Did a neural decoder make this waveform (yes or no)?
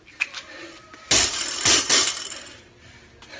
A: no